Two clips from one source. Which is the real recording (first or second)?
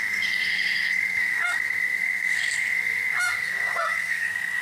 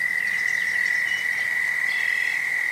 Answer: second